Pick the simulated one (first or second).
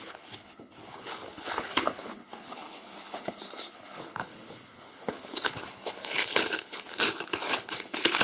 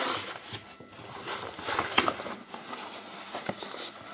first